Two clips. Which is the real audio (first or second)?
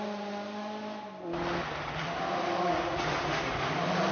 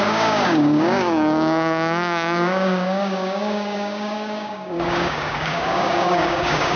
first